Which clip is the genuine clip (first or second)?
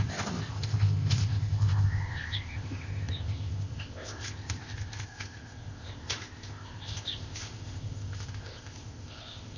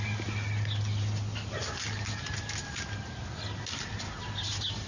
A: second